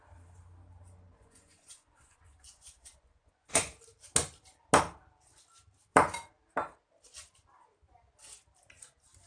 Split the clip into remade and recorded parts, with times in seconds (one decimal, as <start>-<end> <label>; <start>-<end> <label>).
0.0-1.2 recorded; 1.2-3.7 remade; 3.7-9.3 recorded